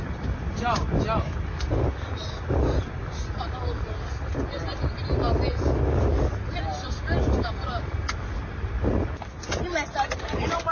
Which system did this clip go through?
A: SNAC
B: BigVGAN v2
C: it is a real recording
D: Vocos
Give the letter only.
C